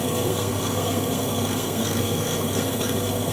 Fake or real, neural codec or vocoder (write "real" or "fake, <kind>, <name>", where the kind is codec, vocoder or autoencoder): fake, codec, SNAC